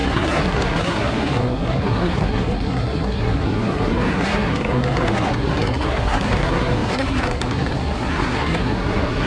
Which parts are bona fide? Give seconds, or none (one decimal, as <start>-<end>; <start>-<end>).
none